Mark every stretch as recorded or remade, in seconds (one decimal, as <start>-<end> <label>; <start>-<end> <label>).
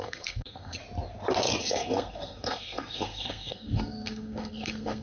0.0-0.8 remade; 0.8-1.6 recorded; 1.6-5.0 remade